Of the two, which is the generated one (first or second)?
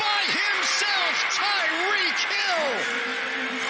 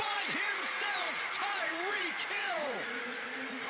second